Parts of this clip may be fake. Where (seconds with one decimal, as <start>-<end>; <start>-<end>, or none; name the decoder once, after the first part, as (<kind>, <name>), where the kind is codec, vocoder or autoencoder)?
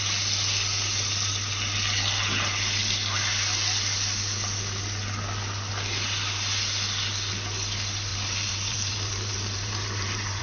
8.1-10.4 (vocoder, BigVGAN v2)